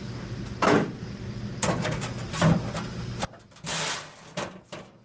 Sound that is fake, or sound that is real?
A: real